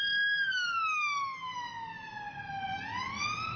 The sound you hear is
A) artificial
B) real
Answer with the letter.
B